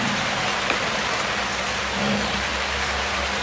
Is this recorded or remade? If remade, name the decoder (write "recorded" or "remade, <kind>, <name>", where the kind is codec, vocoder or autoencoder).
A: recorded